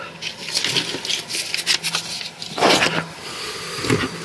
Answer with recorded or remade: recorded